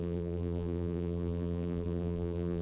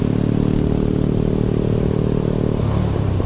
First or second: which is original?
second